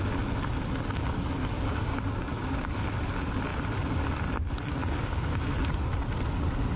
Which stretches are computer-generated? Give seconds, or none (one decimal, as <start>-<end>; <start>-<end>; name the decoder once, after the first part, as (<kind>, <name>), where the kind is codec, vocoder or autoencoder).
1.4-2.7 (codec, DAC); 4.8-5.3